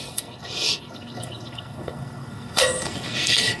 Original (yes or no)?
no